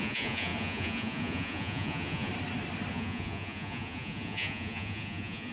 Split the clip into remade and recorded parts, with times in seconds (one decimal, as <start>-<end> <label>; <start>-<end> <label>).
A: 0.0-2.3 remade; 2.3-2.9 recorded; 2.9-5.5 remade